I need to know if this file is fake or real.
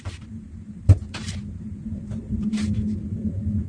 fake